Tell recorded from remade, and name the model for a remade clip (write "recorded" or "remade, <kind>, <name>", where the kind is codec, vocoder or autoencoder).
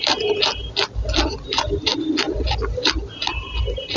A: recorded